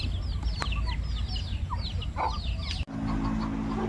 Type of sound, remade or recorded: recorded